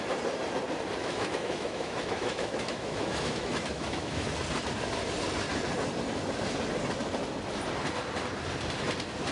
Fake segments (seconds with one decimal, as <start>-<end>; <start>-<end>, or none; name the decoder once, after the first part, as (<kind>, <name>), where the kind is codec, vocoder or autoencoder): 1.0-4.3 (autoencoder, DAC-VAE)